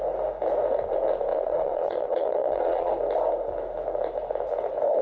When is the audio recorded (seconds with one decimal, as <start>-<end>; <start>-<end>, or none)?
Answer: 0.0-1.3; 2.9-5.0